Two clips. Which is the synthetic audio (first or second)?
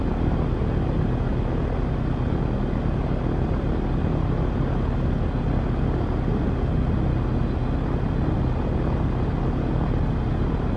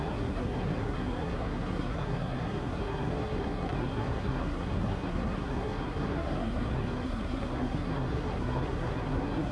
second